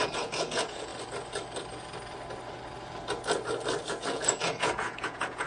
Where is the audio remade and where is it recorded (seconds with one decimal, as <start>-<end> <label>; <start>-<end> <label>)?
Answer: 0.0-0.9 remade; 0.9-3.9 recorded; 3.9-5.5 remade